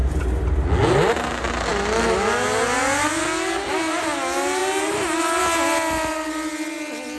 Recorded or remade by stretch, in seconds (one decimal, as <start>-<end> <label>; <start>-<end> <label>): 0.0-0.6 remade; 0.6-4.6 recorded; 4.6-5.4 remade; 5.4-7.2 recorded